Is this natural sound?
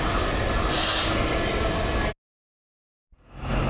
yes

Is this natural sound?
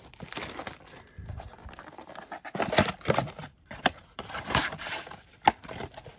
yes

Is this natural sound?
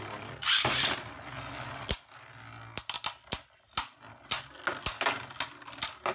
yes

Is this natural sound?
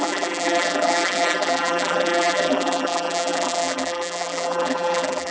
no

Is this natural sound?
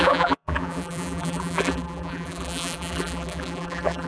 no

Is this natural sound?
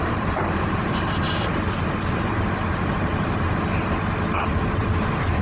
no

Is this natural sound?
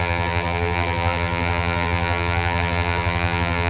no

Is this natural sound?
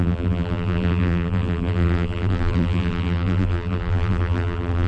no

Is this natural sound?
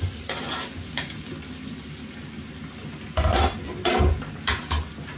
yes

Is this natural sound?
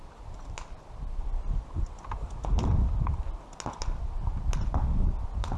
yes